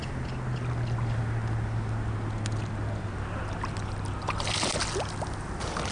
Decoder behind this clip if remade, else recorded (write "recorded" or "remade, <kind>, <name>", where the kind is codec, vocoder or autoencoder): recorded